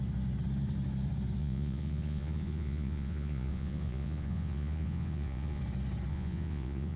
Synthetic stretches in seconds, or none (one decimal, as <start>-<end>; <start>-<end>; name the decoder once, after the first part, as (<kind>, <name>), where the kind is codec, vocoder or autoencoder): 1.4-5.6 (vocoder, Vocos); 6.1-7.0